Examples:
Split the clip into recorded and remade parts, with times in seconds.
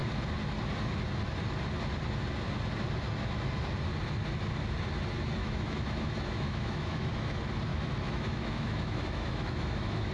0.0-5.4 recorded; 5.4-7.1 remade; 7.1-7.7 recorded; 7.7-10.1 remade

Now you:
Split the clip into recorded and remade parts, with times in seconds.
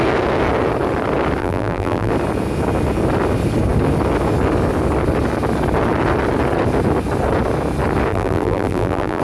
0.0-1.4 recorded; 1.4-2.1 remade; 2.1-8.1 recorded; 8.1-9.2 remade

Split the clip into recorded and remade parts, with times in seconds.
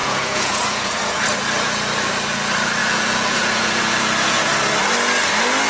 0.0-1.0 remade; 1.0-2.8 recorded; 2.8-4.5 remade; 4.5-5.7 recorded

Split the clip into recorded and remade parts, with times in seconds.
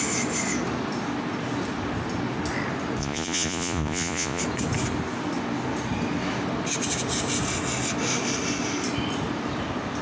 0.0-3.0 recorded; 3.0-4.4 remade; 4.4-10.0 recorded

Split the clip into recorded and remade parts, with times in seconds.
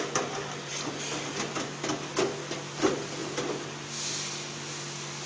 0.0-5.3 recorded